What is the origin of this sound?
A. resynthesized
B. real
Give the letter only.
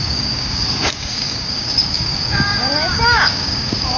A